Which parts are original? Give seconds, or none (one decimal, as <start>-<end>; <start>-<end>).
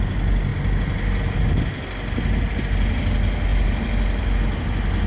0.0-5.1